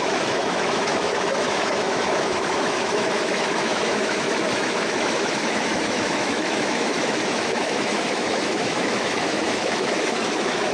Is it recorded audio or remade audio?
remade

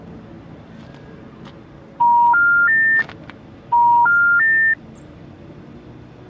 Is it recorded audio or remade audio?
recorded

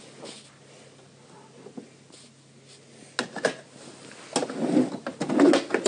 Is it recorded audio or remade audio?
recorded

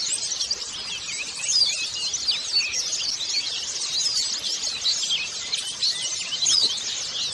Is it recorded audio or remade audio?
recorded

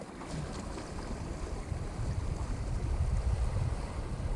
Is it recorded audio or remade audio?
recorded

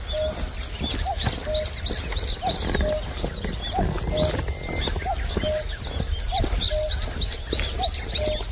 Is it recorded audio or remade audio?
recorded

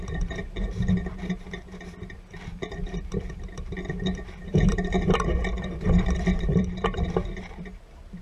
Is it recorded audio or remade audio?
remade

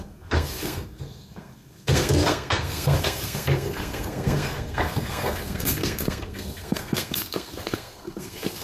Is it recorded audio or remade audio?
remade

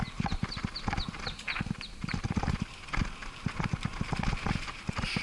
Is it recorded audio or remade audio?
recorded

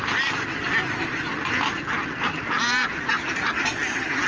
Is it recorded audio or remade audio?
recorded